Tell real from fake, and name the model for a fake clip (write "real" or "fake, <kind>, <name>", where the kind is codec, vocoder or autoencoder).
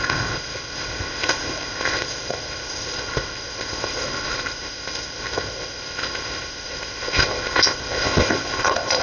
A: fake, codec, ZipCodec